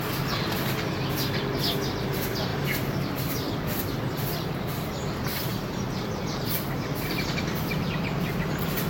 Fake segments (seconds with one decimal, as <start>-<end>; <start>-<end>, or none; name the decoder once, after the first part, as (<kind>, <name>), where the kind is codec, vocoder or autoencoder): none